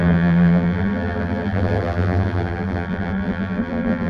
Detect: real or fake fake